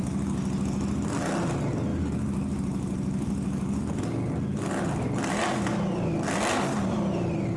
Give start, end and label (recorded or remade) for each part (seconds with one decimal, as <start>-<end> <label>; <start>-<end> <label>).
0.0-7.6 recorded